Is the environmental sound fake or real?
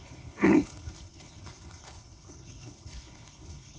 fake